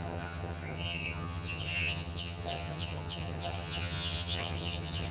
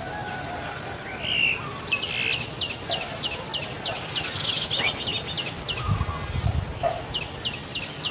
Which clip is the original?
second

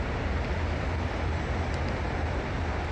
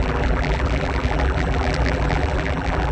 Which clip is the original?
first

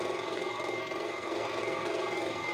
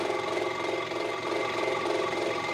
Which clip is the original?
second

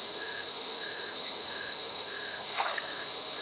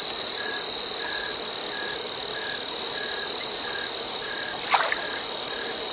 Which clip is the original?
second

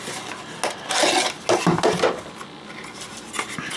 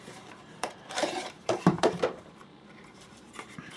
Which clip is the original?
first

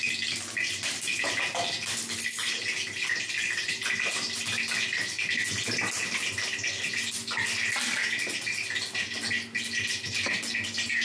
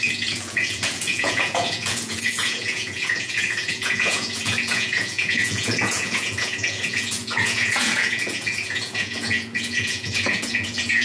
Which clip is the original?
first